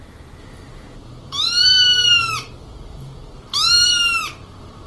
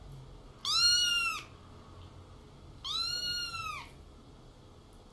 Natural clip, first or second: second